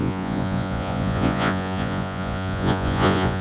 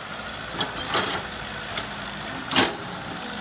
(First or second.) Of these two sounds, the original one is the second